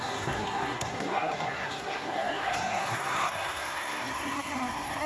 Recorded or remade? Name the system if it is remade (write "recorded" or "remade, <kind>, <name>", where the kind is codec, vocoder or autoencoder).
remade, codec, SNAC